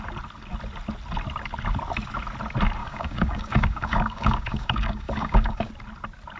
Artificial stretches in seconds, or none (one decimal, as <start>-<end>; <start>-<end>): 2.8-5.7